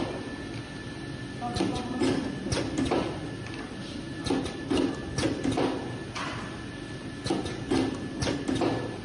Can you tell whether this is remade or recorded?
recorded